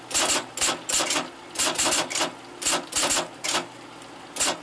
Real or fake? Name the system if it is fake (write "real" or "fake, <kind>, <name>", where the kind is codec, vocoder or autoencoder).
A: real